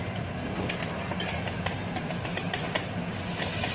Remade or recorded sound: recorded